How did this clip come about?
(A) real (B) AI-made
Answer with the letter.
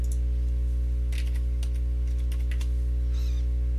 A